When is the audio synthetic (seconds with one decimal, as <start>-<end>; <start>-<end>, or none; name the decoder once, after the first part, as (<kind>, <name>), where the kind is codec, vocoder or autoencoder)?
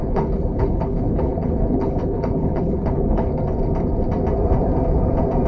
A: 0.0-3.3 (codec, HILCodec)